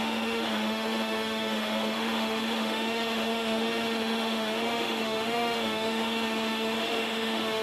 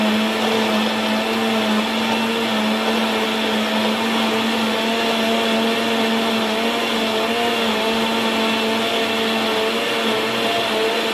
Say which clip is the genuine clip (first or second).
second